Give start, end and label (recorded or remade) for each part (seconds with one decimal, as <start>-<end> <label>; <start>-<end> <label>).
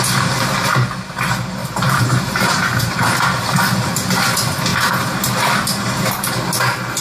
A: 0.0-1.6 recorded; 1.6-3.0 remade; 3.0-4.7 recorded; 4.7-6.3 remade; 6.3-7.0 recorded